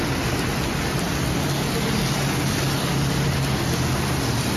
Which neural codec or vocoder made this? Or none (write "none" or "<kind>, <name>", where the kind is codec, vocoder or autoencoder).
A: none